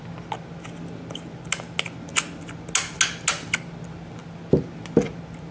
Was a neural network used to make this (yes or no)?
no